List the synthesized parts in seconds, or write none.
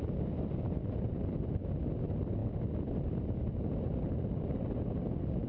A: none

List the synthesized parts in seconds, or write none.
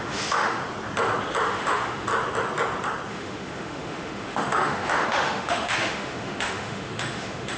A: 0.0-0.6; 1.4-2.1; 3.1-7.6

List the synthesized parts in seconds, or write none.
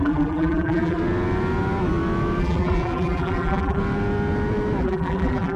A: 0.0-1.0; 2.4-3.8; 4.8-5.6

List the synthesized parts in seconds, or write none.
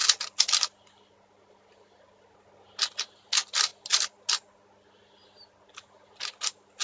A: none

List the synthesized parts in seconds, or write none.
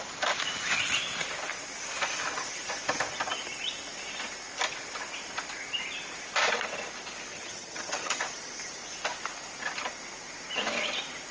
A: 7.3-8.2